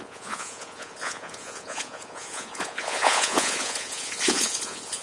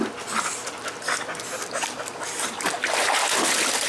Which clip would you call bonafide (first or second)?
second